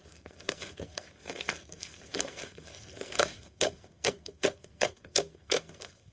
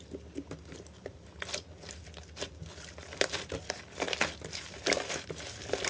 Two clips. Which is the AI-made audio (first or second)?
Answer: first